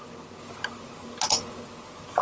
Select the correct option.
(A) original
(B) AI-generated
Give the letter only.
A